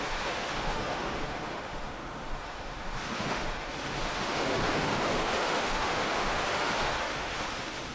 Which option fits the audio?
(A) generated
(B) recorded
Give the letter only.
A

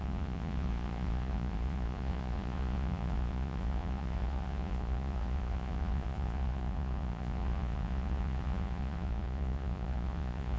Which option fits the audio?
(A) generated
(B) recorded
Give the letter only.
A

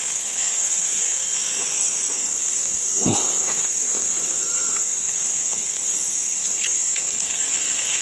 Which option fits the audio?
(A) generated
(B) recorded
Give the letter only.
A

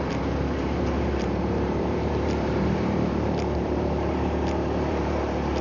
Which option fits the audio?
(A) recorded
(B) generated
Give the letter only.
B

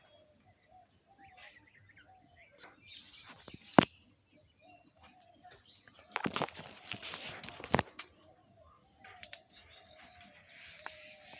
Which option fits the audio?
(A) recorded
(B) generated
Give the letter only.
A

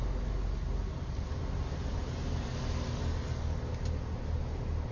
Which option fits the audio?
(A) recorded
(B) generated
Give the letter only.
A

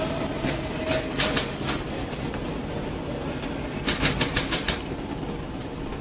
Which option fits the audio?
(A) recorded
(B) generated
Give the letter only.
A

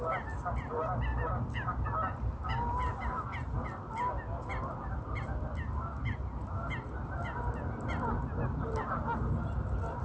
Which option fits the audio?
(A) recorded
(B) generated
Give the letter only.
A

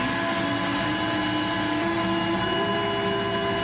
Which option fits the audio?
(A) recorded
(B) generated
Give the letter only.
A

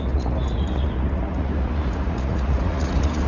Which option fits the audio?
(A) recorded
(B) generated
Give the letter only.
B